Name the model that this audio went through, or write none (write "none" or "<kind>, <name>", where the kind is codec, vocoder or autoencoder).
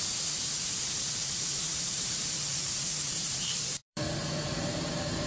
vocoder, BigVGAN v2